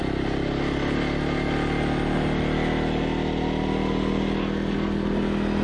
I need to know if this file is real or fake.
real